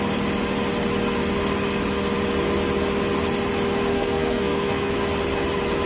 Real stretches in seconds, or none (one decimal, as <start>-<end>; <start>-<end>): 0.0-3.9; 4.9-5.9